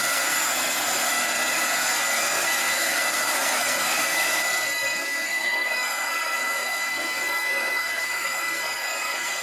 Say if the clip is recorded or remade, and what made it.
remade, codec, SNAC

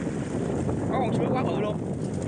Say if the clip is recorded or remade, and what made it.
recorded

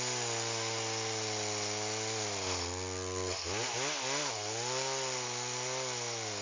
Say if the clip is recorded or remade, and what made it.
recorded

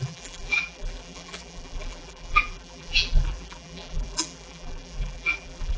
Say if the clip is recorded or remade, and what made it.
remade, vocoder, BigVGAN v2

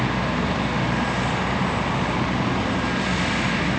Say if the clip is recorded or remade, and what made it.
recorded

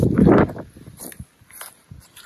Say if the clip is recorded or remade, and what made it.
remade, vocoder, BigVGAN v2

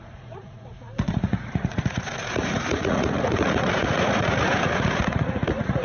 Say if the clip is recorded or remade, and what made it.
remade, vocoder, Vocos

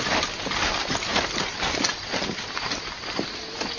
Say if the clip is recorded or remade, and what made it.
recorded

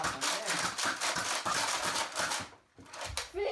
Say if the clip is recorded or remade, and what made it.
recorded